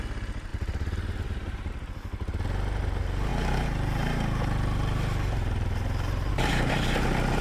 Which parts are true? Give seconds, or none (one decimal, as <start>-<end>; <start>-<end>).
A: 0.0-0.5; 1.7-3.3; 6.3-7.4